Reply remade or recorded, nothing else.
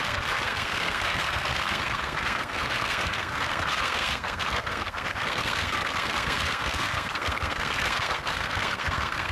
remade